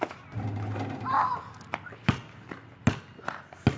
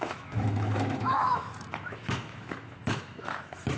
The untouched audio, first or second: first